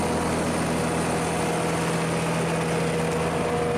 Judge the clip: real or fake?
real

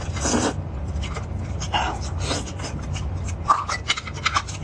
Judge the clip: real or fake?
real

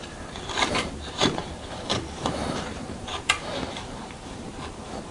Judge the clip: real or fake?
fake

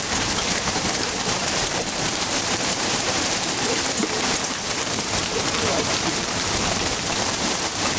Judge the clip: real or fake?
fake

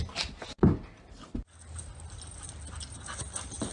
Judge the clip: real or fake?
real